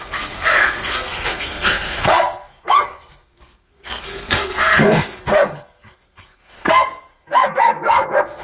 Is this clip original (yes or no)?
no